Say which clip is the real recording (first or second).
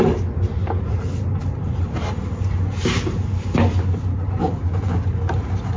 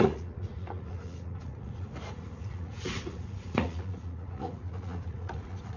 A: first